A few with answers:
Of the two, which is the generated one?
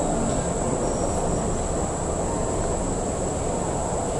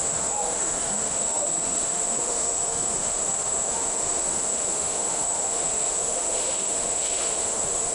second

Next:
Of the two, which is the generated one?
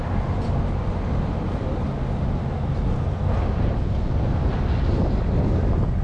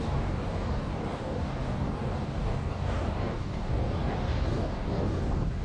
second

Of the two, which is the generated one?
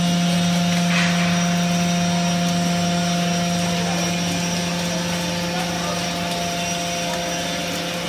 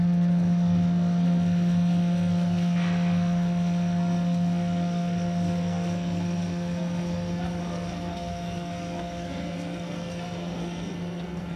second